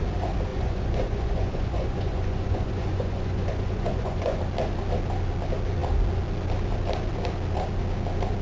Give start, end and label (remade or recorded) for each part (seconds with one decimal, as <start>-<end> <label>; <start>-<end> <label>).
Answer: 0.0-0.5 recorded; 0.5-4.4 remade; 4.4-8.4 recorded